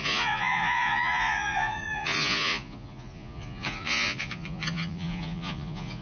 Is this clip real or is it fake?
fake